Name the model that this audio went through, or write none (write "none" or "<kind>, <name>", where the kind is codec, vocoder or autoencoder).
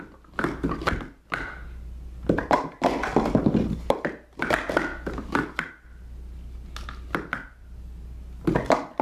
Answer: none